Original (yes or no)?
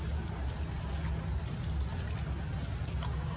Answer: yes